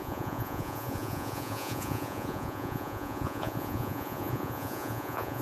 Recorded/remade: remade